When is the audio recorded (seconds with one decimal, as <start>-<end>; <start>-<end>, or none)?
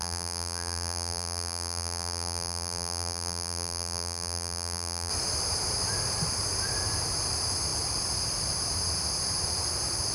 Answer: 5.1-10.1